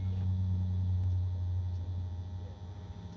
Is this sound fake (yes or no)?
no